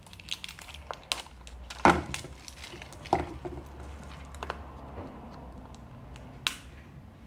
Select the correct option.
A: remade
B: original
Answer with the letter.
B